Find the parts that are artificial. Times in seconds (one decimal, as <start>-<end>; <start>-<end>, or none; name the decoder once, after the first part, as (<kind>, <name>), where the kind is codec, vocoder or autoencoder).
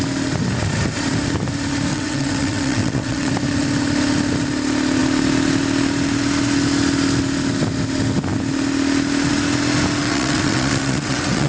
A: 1.9-3.3 (vocoder, WaveNeXt); 10.0-11.5